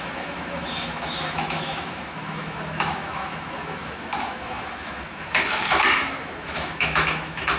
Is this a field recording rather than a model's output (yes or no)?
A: no